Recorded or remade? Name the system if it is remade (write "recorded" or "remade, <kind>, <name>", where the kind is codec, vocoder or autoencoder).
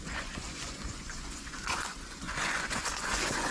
remade, vocoder, Vocos